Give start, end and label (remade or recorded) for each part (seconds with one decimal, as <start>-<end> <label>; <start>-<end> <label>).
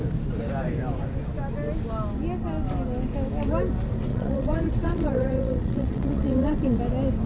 0.0-4.1 recorded; 4.1-6.8 remade; 6.8-7.3 recorded